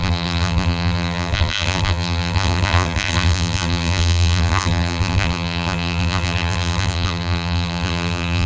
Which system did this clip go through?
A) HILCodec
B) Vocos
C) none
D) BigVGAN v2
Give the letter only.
D